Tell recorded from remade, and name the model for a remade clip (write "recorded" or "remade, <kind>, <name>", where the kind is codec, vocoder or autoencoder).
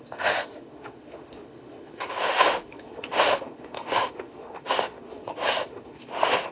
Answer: remade, autoencoder, DAC-VAE